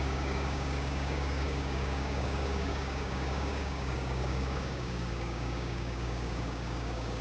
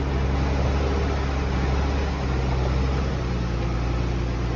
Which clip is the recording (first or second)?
second